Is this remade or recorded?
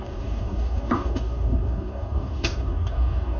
remade